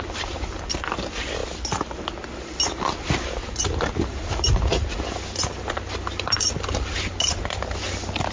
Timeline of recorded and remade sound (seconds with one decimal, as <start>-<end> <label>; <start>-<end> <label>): 0.0-8.3 recorded